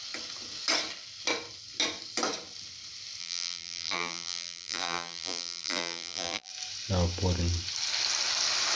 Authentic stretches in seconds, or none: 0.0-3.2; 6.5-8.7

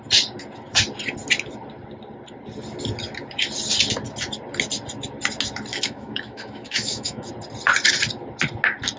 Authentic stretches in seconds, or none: 0.0-5.7; 7.3-9.0

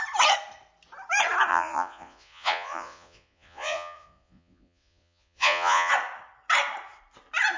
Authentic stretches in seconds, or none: 0.0-1.5; 5.9-7.6

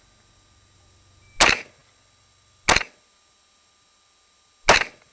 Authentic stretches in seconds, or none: 0.0-5.1

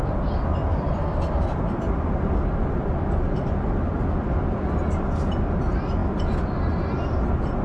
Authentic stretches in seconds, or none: 0.0-0.7; 1.3-2.8; 4.4-6.0; 6.6-7.6

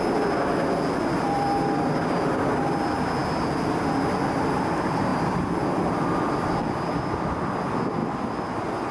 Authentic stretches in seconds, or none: 0.0-8.9

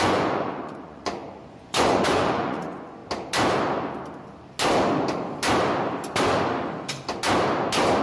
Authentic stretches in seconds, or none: 3.0-8.0